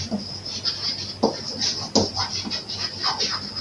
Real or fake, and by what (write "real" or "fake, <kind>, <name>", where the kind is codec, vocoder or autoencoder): real